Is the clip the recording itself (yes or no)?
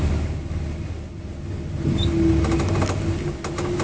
yes